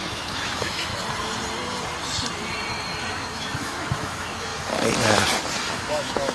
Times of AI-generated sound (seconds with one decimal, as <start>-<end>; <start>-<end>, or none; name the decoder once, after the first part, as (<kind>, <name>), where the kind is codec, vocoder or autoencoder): 0.0-0.9 (autoencoder, DAC-VAE); 3.1-4.5; 5.7-6.3